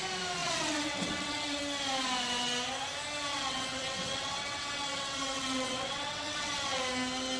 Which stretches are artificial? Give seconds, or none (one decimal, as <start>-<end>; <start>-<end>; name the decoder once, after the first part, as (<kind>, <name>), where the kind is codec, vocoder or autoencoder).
0.4-1.6 (vocoder, WaveNeXt); 3.3-6.8